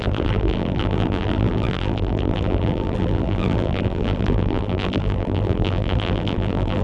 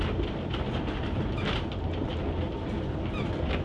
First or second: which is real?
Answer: second